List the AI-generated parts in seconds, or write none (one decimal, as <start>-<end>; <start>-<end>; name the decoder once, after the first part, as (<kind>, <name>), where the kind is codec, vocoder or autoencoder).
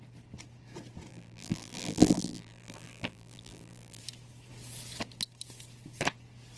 1.1-4.0 (vocoder, BigVGAN v2)